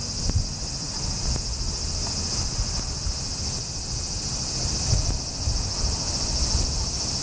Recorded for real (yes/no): yes